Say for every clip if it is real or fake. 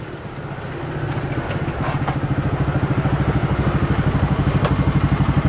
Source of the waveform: real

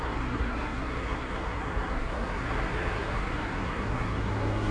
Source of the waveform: fake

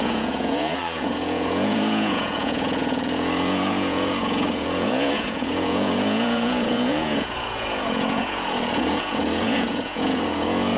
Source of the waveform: fake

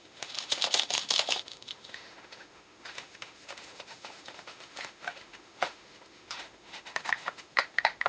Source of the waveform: fake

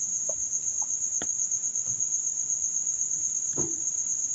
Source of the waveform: real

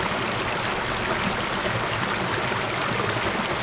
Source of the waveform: real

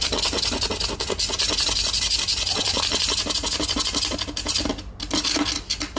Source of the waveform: real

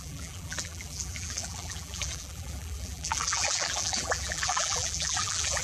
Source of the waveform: fake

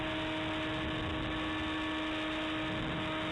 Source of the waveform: real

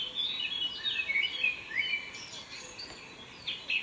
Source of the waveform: real